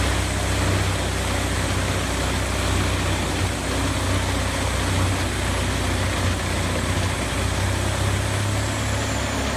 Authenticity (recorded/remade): recorded